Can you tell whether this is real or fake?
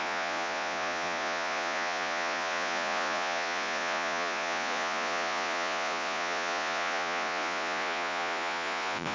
fake